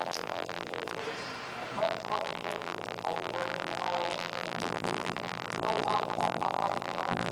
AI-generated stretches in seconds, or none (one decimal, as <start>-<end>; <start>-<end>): 0.0-1.0; 1.8-7.3